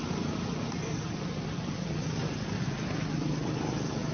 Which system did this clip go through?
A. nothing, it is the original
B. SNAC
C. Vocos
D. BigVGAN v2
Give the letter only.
A